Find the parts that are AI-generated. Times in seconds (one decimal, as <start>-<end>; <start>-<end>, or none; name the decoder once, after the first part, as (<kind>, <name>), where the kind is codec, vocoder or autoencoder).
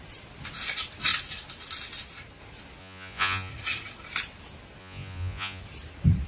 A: 2.8-3.5 (vocoder, Vocos); 4.8-5.6